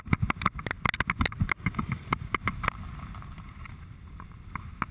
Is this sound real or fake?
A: real